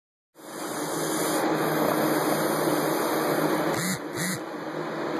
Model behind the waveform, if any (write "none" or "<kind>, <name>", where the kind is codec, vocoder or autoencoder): none